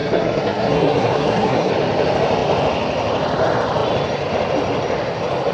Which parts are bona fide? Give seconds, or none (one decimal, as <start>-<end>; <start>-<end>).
1.7-5.5